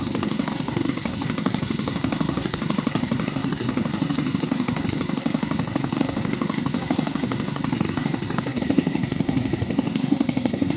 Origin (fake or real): fake